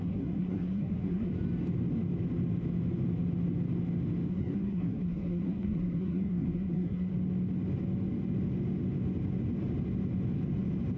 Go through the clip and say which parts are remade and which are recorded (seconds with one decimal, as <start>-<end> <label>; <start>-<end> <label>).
0.0-1.3 remade; 1.3-4.3 recorded; 4.3-7.1 remade; 7.1-11.0 recorded